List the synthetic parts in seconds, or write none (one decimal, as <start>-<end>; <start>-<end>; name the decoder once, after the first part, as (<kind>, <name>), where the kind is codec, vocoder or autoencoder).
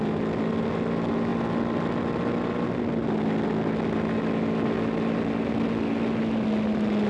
none